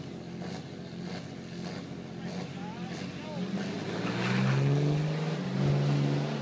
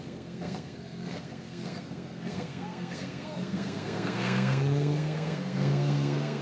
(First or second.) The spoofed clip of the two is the second